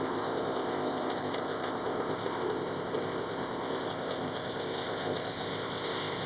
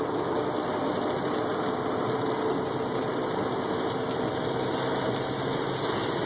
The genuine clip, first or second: second